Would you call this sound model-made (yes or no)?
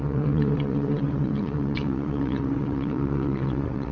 yes